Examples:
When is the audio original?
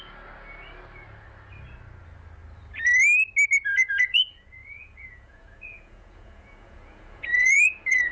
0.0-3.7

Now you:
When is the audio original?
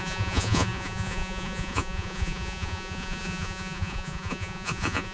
none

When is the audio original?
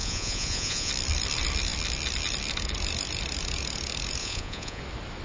0.9-4.2; 4.8-5.2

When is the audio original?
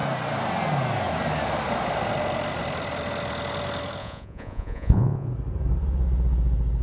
0.0-4.0; 5.3-6.8